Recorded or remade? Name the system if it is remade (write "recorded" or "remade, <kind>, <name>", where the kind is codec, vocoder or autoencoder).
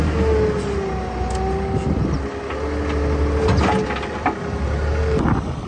recorded